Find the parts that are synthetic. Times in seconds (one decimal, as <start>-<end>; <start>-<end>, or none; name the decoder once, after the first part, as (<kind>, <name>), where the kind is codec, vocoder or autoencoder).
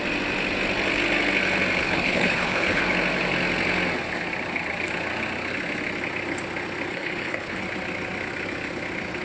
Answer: 1.8-2.8 (codec, HILCodec); 6.9-7.6